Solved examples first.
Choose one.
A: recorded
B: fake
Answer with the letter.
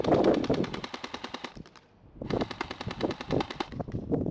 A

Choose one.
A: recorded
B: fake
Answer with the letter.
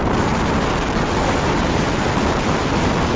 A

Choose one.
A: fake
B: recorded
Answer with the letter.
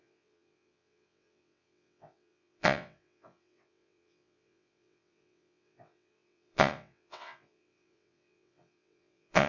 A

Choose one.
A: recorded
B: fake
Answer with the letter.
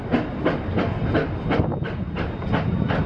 A